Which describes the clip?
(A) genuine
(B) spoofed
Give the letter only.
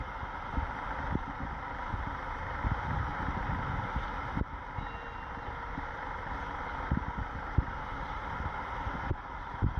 A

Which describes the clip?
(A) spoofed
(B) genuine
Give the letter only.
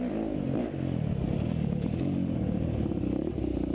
B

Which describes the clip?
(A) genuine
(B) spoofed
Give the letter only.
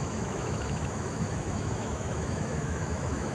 B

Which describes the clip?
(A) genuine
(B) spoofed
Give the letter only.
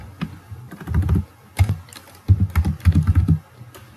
A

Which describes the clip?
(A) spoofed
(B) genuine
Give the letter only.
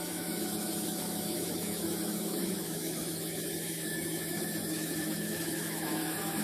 A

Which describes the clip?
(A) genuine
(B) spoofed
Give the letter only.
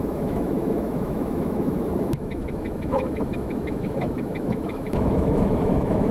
B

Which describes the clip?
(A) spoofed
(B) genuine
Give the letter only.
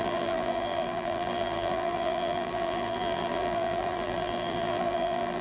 A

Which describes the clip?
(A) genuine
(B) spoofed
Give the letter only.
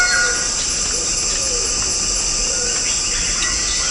A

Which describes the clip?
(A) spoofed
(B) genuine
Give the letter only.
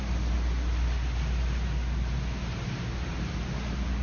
B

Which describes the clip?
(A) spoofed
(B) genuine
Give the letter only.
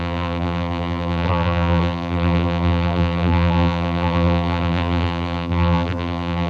A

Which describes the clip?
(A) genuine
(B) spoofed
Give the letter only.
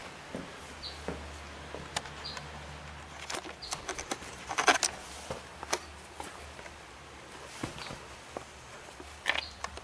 A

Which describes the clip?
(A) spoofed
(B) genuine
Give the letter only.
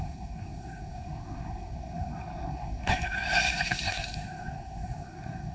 A